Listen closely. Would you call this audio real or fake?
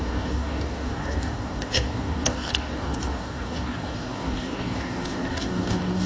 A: fake